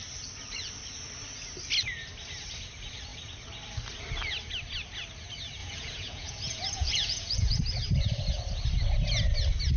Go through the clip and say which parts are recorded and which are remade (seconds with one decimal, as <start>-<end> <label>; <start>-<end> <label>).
0.0-5.6 recorded; 5.6-7.6 remade; 7.6-9.8 recorded